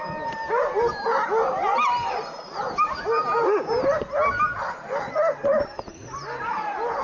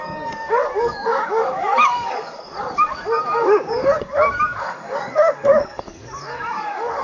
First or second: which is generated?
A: second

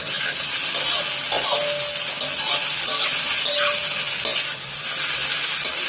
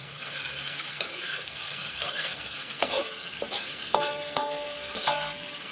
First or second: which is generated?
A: second